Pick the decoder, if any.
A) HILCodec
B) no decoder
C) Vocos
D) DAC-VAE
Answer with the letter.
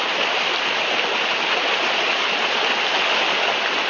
B